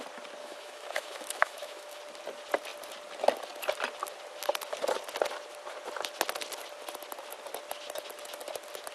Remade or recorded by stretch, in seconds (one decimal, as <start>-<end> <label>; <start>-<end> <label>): 0.0-0.4 recorded; 0.4-2.0 remade; 2.0-8.9 recorded